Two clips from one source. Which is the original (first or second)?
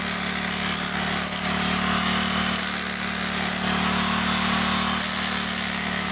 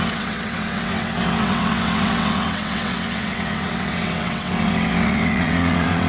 first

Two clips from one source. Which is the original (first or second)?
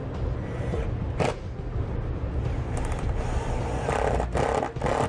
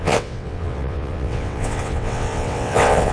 first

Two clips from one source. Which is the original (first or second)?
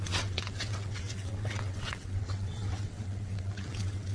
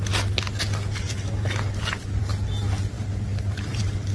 second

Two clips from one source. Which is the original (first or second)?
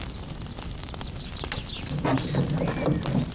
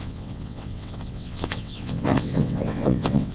first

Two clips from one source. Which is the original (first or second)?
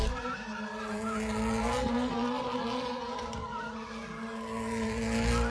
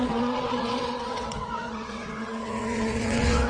first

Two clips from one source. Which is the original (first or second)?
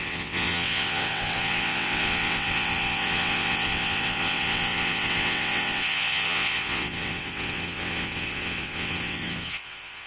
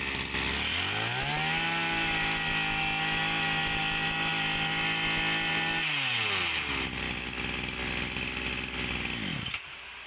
second